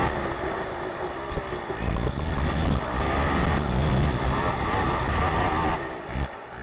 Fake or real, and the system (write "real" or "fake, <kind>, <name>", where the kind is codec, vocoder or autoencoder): real